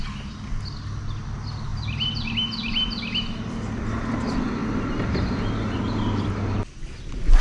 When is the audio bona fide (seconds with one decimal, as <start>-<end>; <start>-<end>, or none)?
0.0-7.4